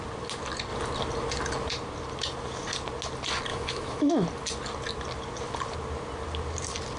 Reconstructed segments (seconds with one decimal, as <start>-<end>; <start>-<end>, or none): 3.5-4.1